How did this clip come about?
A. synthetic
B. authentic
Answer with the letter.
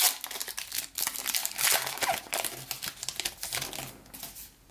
B